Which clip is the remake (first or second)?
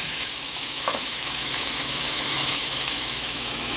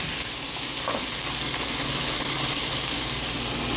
first